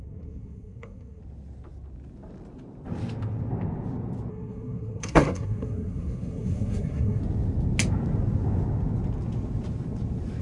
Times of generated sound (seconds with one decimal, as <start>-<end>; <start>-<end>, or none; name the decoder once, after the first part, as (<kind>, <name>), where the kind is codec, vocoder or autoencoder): 0.0-1.2 (codec, SNAC); 4.3-7.2